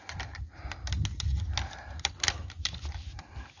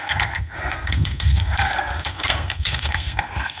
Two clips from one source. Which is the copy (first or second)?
second